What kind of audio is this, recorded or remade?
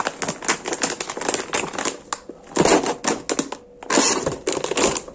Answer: recorded